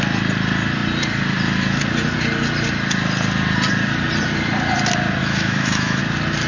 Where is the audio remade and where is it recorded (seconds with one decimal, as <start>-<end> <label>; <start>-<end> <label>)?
0.0-5.2 recorded; 5.2-6.0 remade; 6.0-6.5 recorded